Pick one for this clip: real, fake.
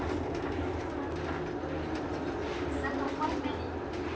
real